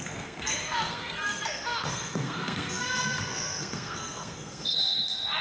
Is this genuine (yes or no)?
no